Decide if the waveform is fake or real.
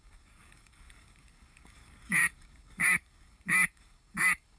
fake